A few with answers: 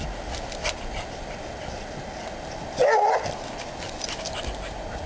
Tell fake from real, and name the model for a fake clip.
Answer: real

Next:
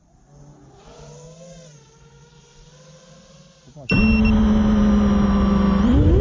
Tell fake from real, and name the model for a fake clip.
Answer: real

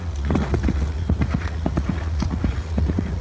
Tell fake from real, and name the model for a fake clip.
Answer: fake, vocoder, Vocos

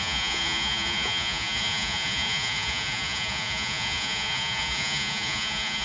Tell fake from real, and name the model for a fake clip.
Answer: fake, vocoder, Vocos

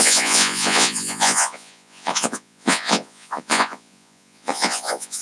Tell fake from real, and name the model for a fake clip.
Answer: fake, vocoder, Vocos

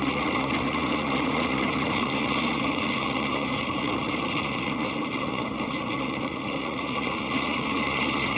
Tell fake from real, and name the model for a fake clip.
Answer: fake, vocoder, Vocos